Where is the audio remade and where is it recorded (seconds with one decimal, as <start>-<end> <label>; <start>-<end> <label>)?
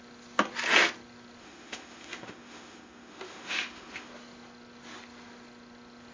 0.0-1.4 recorded; 1.4-4.1 remade; 4.1-6.1 recorded